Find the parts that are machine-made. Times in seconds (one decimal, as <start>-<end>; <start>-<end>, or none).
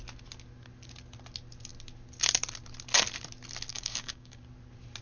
3.7-4.4